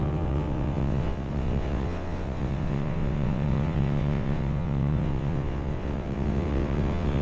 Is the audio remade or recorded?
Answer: remade